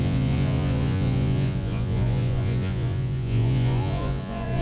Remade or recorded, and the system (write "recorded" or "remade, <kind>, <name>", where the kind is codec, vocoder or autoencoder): remade, vocoder, Vocos